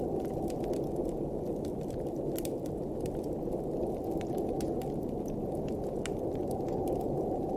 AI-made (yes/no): no